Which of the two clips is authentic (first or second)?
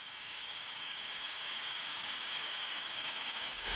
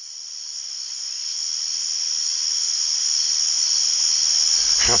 second